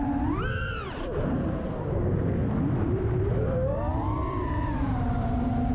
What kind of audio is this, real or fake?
fake